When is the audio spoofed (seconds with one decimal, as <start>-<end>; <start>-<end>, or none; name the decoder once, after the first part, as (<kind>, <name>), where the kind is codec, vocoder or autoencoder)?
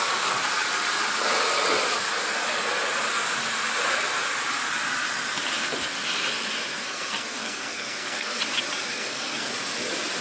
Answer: 6.7-8.4 (codec, SNAC); 8.9-9.5